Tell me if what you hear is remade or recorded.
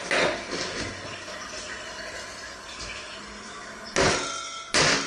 recorded